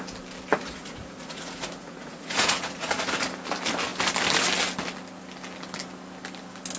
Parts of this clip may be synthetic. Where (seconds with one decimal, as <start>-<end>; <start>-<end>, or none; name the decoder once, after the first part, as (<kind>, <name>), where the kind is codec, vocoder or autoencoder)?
0.5-2.9 (vocoder, Vocos)